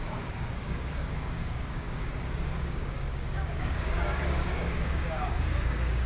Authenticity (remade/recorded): remade